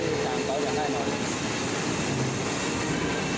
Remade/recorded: recorded